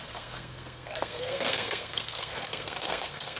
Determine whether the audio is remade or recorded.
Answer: remade